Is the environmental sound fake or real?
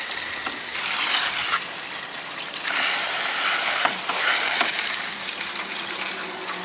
real